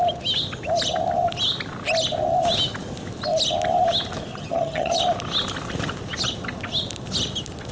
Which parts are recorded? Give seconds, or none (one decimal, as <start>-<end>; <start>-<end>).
0.0-4.3; 5.0-7.7